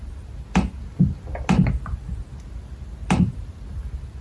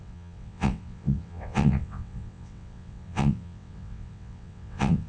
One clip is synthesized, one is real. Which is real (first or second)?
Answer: first